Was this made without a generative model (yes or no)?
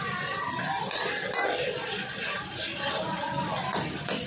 yes